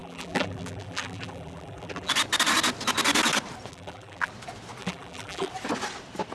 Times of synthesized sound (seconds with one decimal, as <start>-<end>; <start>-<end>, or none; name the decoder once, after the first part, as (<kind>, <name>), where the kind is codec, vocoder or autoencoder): 0.0-2.1 (vocoder, BigVGAN v2); 3.7-4.3; 4.8-5.5

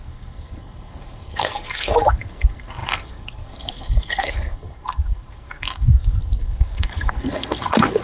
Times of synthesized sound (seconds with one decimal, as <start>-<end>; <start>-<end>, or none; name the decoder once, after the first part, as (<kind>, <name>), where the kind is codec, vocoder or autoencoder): 0.0-8.0 (codec, SNAC)

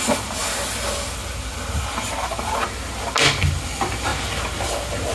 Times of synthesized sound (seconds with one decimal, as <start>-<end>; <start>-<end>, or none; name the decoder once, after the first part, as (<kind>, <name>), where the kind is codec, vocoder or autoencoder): none

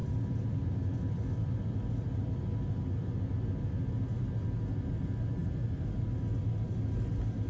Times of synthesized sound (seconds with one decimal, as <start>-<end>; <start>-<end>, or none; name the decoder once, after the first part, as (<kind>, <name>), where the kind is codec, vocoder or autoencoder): none

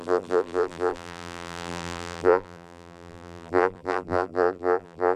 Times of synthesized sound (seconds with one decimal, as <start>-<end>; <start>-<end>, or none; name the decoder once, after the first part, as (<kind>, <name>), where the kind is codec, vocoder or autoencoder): 0.0-5.2 (vocoder, BigVGAN v2)

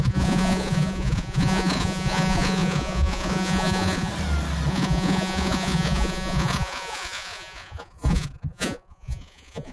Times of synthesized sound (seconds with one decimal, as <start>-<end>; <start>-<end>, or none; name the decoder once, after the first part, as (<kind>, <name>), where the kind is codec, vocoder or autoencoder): 0.0-4.1 (vocoder, Vocos); 4.7-9.7

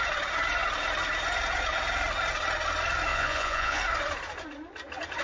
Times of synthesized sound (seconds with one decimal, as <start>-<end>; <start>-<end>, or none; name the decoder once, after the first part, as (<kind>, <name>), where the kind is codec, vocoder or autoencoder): 3.1-3.8 (vocoder, Vocos)